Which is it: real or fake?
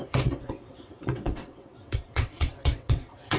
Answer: fake